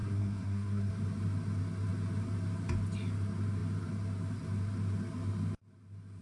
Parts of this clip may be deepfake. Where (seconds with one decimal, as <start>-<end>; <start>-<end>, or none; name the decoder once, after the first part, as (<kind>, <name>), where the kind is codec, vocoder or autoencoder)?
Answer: 0.0-0.9 (codec, SNAC)